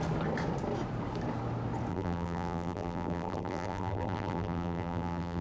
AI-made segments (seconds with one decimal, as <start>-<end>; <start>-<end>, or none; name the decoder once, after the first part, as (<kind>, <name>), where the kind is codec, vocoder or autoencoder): 1.9-5.4 (vocoder, BigVGAN v2)